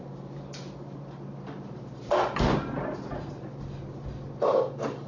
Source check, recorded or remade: recorded